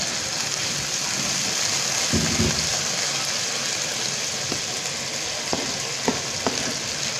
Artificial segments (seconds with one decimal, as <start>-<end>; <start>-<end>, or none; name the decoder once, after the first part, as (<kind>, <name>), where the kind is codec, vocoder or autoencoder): none